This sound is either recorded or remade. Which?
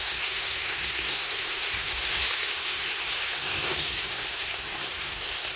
remade